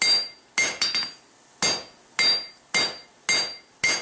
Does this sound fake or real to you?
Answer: real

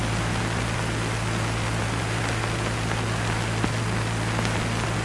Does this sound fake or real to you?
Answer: real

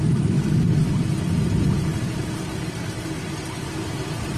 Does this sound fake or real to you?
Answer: fake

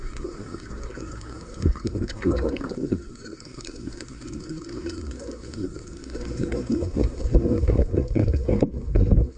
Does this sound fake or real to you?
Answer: fake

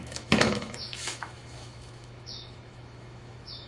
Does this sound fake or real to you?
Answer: fake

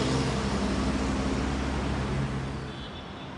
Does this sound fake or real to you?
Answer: real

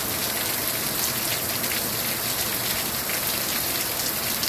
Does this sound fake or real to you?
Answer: real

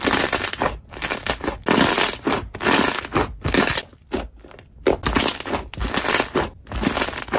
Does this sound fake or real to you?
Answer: real